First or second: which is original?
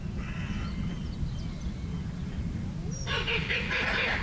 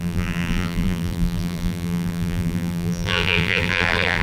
first